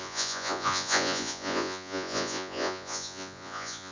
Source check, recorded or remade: remade